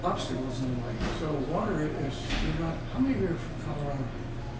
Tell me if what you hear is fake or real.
real